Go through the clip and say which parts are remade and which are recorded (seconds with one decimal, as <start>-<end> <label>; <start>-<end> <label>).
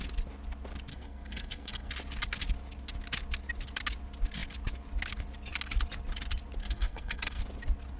0.0-0.9 recorded; 0.9-1.9 remade; 1.9-6.6 recorded; 6.6-7.4 remade; 7.4-8.0 recorded